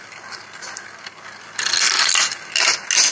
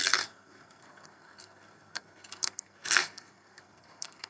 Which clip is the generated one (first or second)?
second